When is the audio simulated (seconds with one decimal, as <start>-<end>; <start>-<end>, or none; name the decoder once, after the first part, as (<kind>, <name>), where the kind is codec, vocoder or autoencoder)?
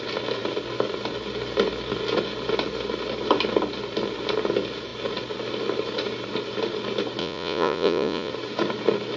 7.2-8.3 (vocoder, Vocos)